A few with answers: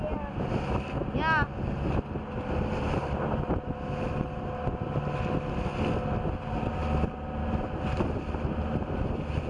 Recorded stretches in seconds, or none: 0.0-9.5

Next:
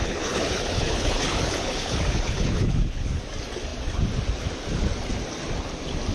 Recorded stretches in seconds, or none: 3.2-6.1

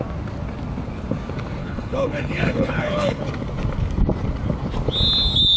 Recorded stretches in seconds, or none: 0.0-1.6; 3.2-5.6

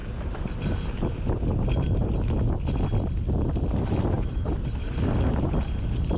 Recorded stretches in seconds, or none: 0.0-6.2

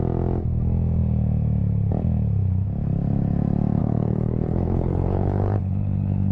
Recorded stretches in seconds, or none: 0.0-3.8

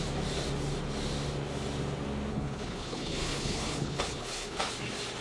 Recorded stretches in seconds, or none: 0.0-2.3; 4.7-5.2